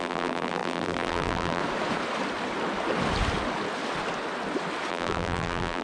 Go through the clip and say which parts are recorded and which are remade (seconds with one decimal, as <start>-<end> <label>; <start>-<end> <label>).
0.0-1.6 remade; 1.6-4.9 recorded; 4.9-5.8 remade